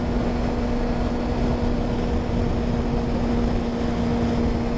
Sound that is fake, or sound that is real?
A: real